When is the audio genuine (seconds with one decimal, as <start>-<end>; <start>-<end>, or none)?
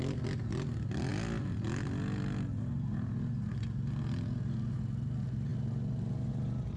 0.0-6.8